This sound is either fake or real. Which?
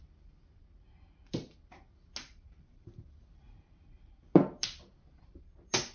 real